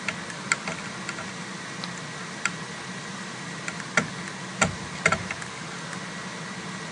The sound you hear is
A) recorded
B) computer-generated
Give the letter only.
A